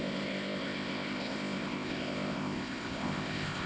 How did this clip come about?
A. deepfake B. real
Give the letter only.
A